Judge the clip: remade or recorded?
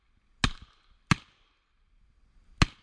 recorded